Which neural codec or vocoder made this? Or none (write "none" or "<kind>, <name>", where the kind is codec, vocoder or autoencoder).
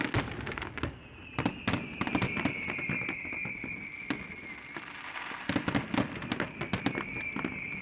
none